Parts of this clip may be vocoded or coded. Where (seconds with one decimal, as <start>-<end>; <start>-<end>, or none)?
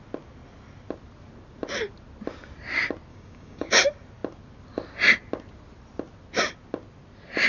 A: 3.1-3.7